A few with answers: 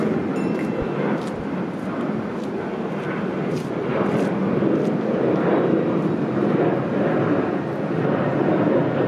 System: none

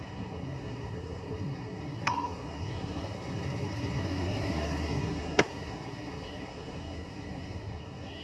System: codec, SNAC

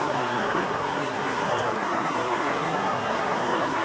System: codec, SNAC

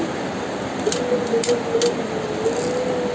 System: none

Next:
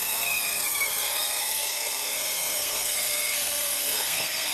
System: codec, SNAC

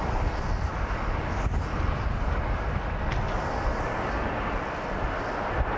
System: none